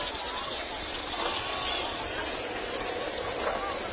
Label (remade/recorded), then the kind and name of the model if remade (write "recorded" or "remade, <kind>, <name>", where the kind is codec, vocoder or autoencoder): recorded